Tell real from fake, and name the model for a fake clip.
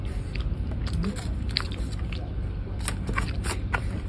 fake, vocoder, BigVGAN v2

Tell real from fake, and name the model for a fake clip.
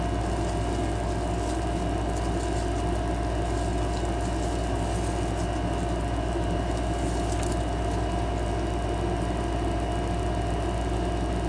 real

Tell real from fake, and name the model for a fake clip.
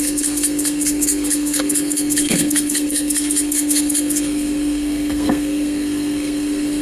fake, codec, SNAC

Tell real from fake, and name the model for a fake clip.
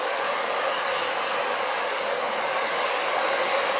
fake, codec, DAC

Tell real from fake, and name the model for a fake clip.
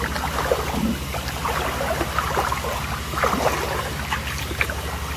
real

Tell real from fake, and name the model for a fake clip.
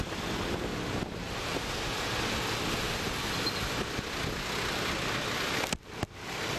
real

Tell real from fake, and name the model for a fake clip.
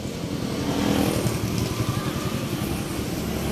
real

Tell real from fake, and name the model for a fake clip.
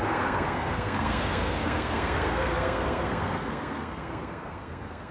fake, codec, SNAC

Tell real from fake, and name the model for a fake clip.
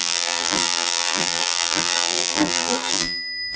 fake, vocoder, BigVGAN v2